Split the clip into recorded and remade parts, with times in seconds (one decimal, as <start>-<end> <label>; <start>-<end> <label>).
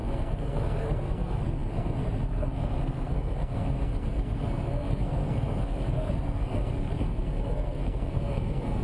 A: 0.0-8.8 remade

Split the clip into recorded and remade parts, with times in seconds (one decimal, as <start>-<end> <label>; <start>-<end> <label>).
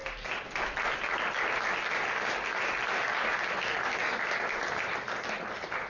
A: 0.0-5.9 recorded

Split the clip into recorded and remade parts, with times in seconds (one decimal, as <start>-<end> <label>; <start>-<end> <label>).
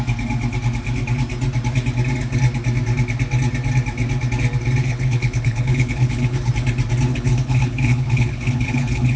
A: 0.0-4.8 recorded; 4.8-6.5 remade; 6.5-7.1 recorded; 7.1-9.2 remade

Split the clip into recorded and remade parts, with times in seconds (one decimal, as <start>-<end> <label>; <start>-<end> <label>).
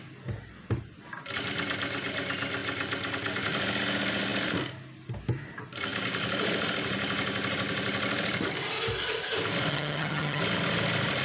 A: 0.0-9.7 recorded; 9.7-10.4 remade; 10.4-11.2 recorded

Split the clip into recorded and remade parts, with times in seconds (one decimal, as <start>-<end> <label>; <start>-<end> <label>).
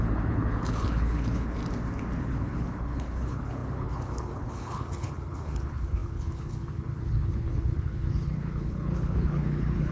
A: 0.0-1.6 remade; 1.6-2.2 recorded; 2.2-9.9 remade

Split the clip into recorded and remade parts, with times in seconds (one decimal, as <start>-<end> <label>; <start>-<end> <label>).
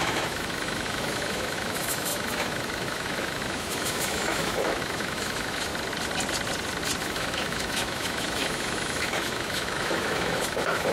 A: 0.0-5.7 remade; 5.7-7.0 recorded; 7.0-10.9 remade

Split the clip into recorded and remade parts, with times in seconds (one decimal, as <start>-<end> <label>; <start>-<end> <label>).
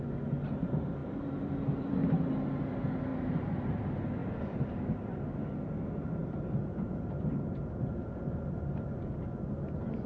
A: 0.0-1.0 recorded; 1.0-1.9 remade; 1.9-3.1 recorded; 3.1-3.8 remade; 3.8-4.2 recorded; 4.2-5.1 remade; 5.1-10.1 recorded